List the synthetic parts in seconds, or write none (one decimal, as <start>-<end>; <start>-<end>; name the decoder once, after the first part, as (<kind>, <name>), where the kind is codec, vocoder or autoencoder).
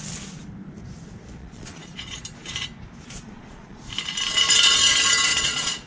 1.4-2.2 (vocoder, Vocos); 3.0-3.8; 5.3-5.9